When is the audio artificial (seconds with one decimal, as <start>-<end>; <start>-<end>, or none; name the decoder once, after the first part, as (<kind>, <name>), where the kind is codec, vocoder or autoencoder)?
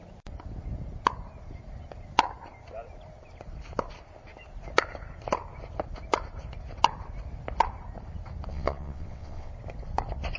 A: 8.5-9.5 (vocoder, WaveNeXt)